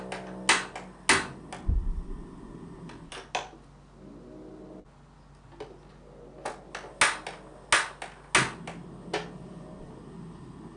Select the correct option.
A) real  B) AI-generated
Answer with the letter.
A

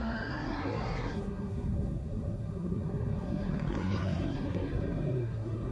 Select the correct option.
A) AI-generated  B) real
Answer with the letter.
A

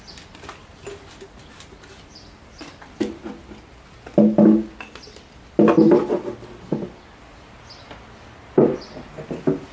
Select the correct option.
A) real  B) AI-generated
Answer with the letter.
A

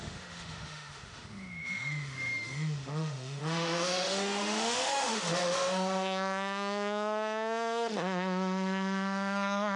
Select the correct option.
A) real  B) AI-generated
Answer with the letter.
B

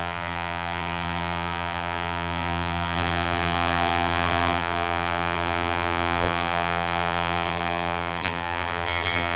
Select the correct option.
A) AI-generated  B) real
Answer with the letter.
A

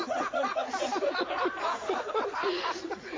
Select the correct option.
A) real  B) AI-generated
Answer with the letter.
B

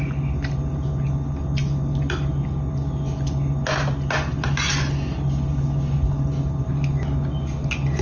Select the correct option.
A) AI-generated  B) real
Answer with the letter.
B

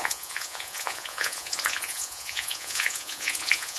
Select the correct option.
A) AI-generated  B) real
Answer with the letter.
A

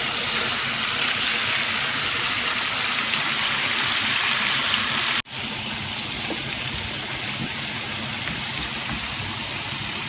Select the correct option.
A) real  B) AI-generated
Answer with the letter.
A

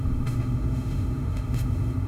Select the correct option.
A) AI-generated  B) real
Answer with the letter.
A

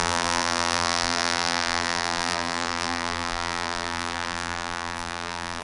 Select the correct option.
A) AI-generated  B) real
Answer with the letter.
A